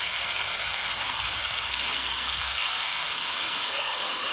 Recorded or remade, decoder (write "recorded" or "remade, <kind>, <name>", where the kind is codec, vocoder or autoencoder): remade, codec, SNAC